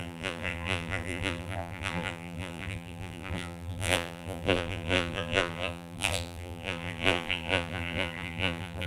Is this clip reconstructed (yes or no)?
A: yes